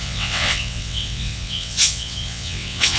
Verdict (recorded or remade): remade